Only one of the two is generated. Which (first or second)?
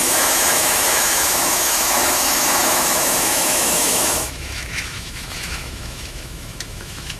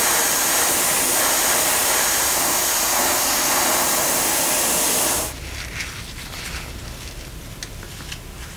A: first